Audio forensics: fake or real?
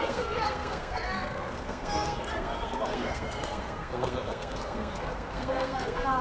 fake